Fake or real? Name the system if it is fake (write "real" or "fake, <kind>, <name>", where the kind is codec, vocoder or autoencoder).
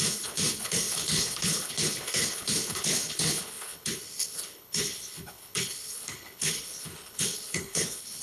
fake, codec, HILCodec